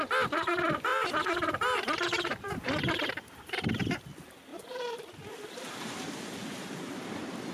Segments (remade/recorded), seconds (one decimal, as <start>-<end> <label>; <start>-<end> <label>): 0.0-0.9 recorded; 0.9-3.1 remade; 3.1-4.5 recorded; 4.5-6.1 remade; 6.1-7.5 recorded